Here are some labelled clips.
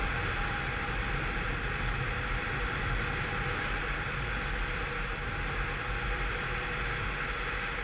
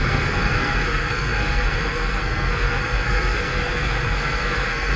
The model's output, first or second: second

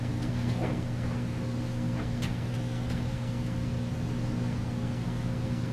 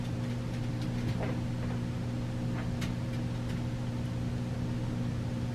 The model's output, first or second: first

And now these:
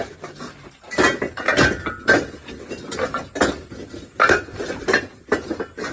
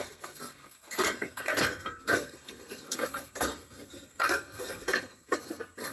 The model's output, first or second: second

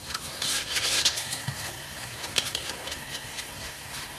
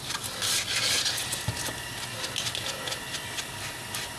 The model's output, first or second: first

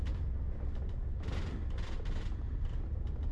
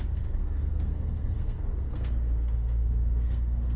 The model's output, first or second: second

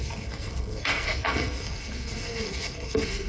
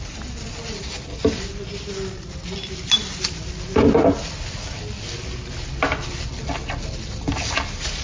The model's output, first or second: first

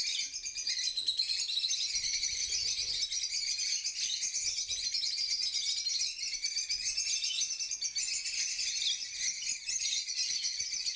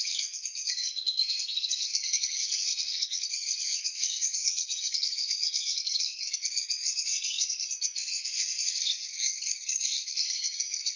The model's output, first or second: second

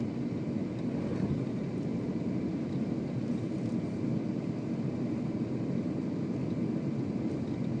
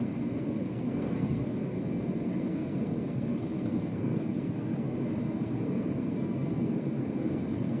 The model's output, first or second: second